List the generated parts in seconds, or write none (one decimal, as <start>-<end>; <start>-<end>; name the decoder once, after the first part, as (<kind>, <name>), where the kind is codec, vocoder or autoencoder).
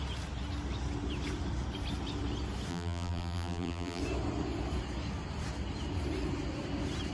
2.7-4.0 (vocoder, BigVGAN v2)